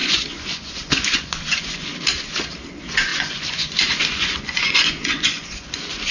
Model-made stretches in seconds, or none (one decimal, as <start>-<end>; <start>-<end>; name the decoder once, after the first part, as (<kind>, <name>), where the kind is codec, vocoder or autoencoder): 0.0-1.9 (vocoder, Vocos); 2.7-6.1

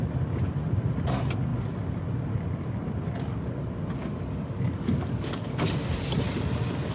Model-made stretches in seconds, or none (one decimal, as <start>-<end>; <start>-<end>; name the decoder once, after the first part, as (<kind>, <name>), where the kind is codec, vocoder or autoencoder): 4.0-6.0 (codec, DAC)

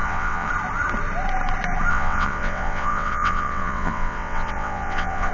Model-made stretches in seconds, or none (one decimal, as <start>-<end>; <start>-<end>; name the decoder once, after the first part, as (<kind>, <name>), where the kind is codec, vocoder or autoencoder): 0.0-0.5 (vocoder, WaveNeXt); 1.9-5.3

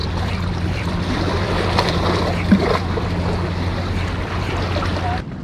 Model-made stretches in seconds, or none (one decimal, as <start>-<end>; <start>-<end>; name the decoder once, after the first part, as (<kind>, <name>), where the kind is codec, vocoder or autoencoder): 0.0-3.2 (vocoder, BigVGAN v2)

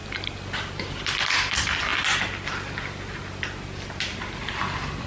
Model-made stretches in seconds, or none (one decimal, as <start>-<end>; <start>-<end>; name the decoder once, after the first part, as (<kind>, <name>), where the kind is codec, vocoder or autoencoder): none